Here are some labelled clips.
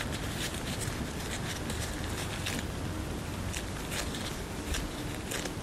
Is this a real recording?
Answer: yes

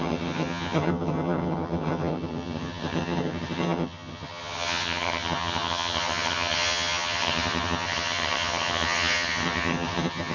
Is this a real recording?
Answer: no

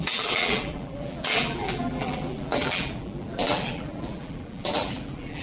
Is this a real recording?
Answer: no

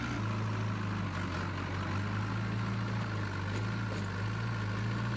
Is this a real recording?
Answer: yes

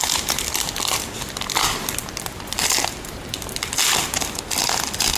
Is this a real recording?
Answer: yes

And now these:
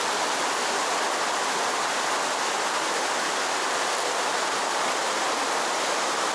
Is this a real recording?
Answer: no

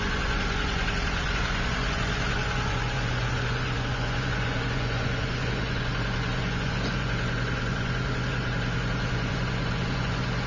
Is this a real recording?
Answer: no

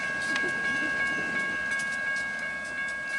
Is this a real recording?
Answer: yes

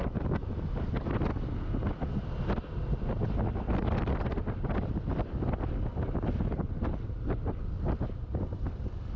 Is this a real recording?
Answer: yes